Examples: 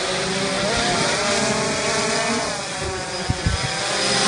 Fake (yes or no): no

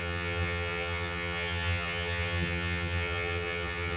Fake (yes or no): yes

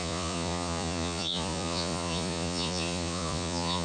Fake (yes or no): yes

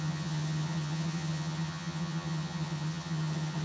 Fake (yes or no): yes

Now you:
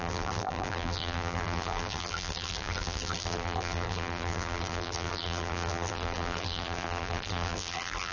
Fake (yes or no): yes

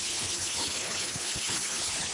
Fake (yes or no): yes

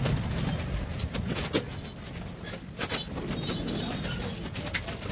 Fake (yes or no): no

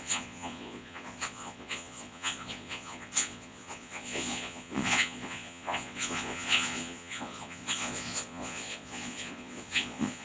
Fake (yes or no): yes